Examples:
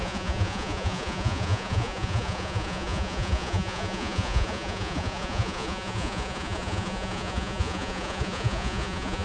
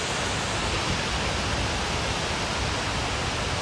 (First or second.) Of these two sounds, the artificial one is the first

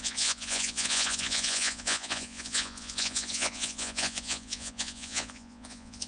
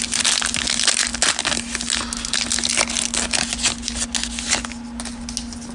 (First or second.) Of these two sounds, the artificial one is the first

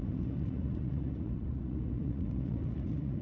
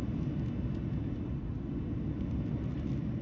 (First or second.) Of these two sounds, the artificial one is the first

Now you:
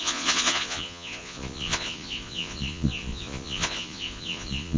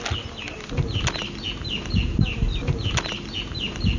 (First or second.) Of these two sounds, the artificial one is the first